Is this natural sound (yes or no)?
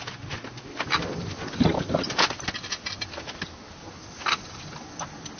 yes